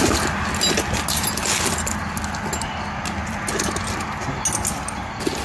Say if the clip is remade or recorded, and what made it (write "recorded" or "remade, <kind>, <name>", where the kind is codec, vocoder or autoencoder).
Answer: recorded